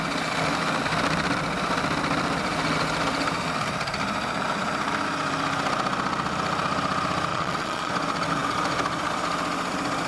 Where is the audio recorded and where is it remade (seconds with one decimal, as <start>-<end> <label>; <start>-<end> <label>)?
0.0-7.3 recorded; 7.3-7.9 remade; 7.9-10.1 recorded